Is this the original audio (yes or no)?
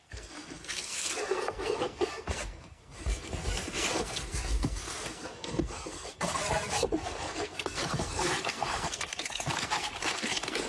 no